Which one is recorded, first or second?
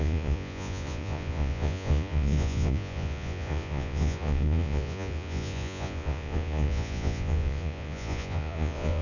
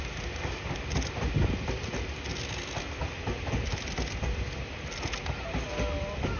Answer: second